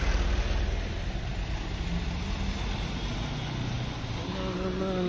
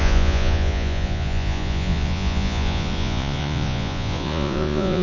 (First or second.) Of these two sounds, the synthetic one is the second